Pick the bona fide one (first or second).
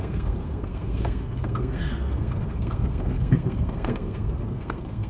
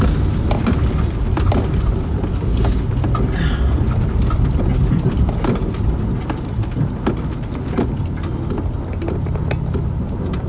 second